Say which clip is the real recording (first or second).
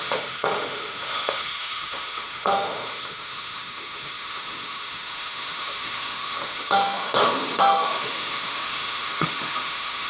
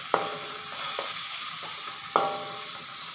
second